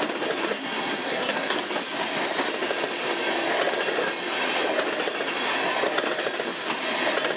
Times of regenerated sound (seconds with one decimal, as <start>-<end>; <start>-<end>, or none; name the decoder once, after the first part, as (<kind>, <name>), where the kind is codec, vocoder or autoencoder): 0.4-1.6 (codec, SNAC)